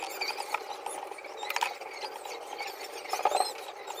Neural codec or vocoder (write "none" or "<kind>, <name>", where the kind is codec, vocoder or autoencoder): none